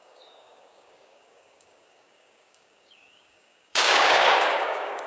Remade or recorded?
remade